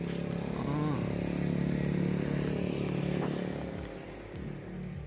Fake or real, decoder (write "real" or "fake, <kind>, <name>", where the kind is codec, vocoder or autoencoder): real